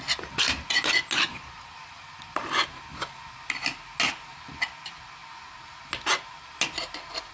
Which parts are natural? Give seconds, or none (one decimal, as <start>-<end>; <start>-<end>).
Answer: 0.0-1.3; 2.4-7.3